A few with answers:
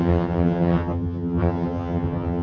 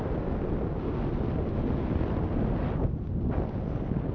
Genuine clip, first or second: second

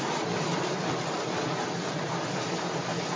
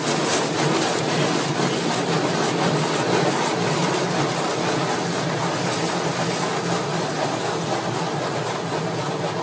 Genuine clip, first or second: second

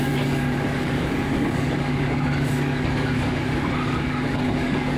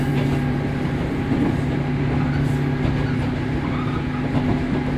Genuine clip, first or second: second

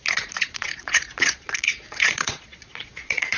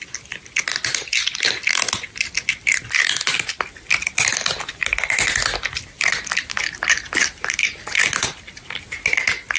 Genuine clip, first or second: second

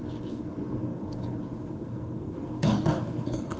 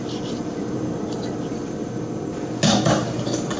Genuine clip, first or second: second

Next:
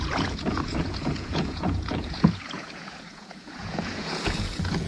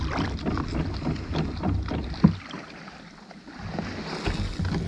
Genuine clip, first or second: second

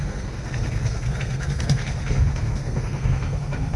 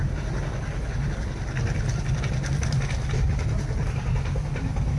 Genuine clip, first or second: second